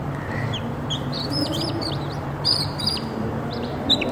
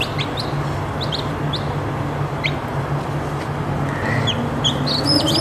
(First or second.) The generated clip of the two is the first